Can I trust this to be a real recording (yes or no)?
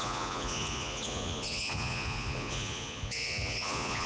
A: no